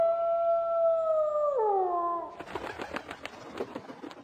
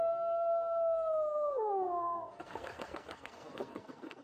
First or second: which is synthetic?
second